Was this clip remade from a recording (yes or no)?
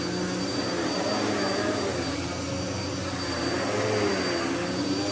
no